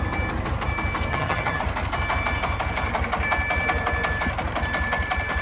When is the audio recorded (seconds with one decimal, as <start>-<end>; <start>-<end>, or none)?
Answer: 0.0-1.1; 1.6-5.4